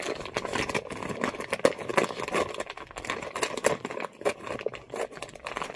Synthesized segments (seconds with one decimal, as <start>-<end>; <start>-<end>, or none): none